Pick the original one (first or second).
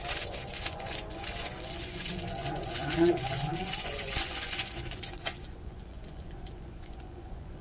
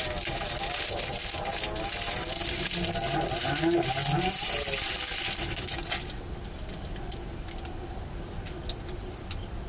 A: second